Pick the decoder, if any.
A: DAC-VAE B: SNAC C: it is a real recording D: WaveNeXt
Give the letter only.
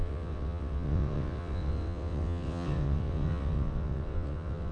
D